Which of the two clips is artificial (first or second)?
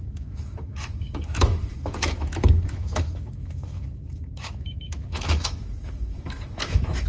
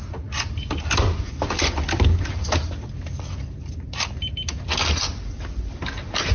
first